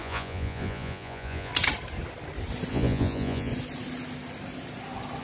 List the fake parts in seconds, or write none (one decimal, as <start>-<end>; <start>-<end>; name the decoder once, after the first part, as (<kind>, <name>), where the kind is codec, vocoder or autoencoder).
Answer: 0.0-1.5 (vocoder, Vocos); 2.7-3.5